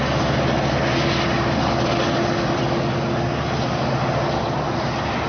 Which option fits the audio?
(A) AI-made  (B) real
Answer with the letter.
B